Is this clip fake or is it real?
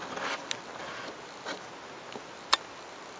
real